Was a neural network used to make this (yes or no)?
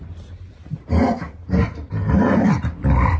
yes